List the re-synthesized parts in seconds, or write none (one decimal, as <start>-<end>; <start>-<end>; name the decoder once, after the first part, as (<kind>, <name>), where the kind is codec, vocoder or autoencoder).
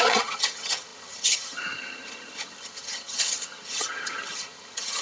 0.0-5.0 (vocoder, HiFi-GAN)